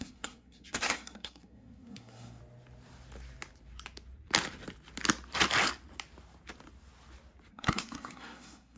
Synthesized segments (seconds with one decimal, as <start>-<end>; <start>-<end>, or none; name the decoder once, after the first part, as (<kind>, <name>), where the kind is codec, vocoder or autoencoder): 0.0-2.4 (codec, SNAC); 7.5-8.8